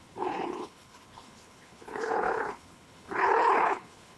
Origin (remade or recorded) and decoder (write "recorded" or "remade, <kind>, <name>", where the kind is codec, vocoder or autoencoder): remade, codec, HILCodec